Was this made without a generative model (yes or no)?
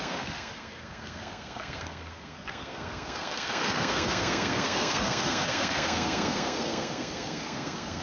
no